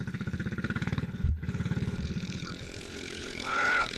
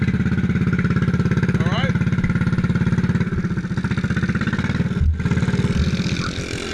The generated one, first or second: first